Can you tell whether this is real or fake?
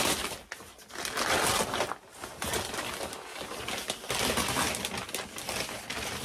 real